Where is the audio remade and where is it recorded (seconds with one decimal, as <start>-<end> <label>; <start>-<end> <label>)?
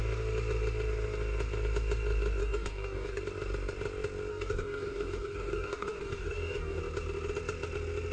0.0-2.4 recorded; 2.4-3.2 remade; 3.2-4.3 recorded; 4.3-6.8 remade; 6.8-8.1 recorded